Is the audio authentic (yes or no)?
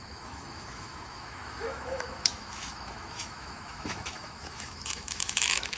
no